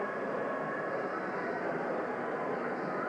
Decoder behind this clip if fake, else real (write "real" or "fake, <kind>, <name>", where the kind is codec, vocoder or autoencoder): real